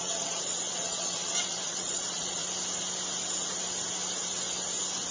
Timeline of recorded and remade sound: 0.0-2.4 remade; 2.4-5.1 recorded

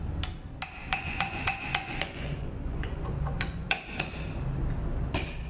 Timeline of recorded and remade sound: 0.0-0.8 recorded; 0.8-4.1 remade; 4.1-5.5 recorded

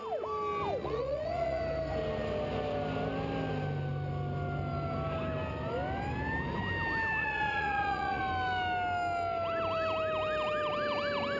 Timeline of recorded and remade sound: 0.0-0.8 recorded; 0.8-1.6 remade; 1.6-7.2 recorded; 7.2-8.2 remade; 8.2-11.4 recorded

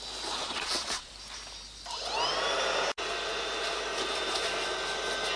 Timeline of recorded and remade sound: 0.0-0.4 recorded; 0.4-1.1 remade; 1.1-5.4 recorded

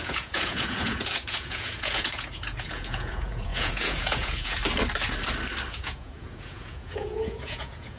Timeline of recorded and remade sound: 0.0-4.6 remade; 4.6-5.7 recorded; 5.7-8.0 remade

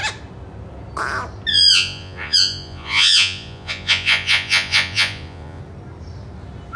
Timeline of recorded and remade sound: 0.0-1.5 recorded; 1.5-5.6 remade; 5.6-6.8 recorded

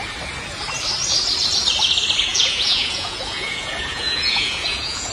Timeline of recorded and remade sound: 0.0-2.3 recorded; 2.3-5.1 remade